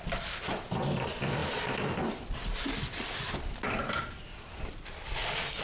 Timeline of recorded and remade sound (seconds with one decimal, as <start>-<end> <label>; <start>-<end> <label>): 0.0-5.6 recorded

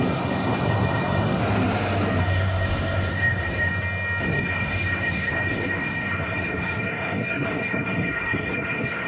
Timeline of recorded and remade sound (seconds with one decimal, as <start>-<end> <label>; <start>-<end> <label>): 0.0-1.4 remade; 1.4-2.2 recorded; 2.2-3.7 remade; 3.7-4.2 recorded; 4.2-9.1 remade

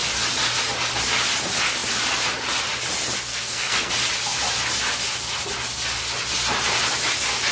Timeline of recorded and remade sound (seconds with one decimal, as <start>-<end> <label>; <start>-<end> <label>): 0.0-3.3 recorded; 3.3-3.9 remade; 3.9-7.5 recorded

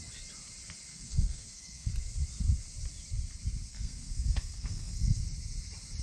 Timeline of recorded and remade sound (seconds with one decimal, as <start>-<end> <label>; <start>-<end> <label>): 0.0-0.9 recorded; 0.9-1.9 remade; 1.9-3.7 recorded; 3.7-5.2 remade; 5.2-6.0 recorded